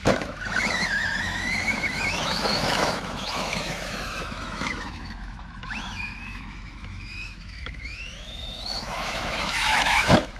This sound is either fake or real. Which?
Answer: fake